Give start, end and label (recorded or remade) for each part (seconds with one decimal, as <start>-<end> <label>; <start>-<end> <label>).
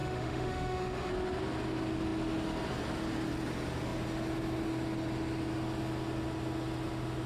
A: 0.0-1.1 remade; 1.1-7.3 recorded